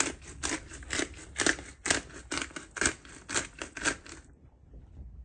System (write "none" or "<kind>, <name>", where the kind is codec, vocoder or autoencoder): none